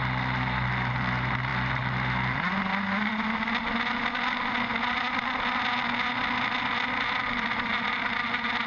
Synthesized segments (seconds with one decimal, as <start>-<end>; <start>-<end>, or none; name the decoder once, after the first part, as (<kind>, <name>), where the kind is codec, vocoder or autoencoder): none